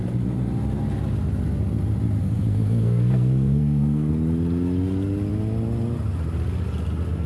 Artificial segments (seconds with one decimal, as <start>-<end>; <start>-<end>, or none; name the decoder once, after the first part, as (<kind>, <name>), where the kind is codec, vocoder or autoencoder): 2.2-4.1 (codec, SNAC)